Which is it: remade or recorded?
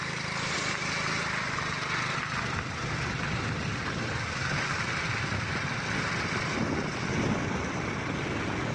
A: recorded